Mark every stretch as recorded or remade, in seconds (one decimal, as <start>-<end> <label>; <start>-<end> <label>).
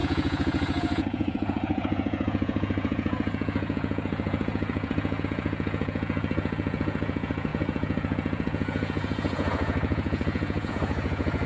0.0-11.5 remade